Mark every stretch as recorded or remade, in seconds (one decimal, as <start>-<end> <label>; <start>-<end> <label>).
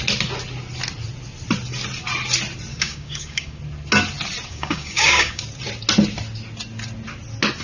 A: 0.0-2.7 recorded; 2.7-3.6 remade; 3.6-4.5 recorded; 4.5-5.4 remade; 5.4-7.6 recorded